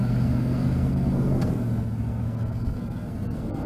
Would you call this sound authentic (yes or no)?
no